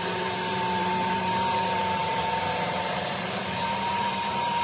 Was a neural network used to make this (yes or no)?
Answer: yes